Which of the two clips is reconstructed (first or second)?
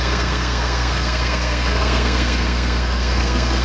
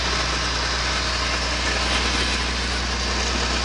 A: first